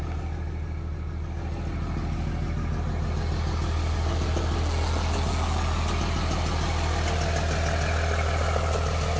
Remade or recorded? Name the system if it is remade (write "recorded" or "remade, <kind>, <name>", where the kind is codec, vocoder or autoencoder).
recorded